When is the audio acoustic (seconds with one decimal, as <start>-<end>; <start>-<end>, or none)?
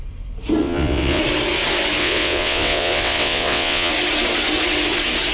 0.0-0.6; 1.2-2.0; 3.9-5.3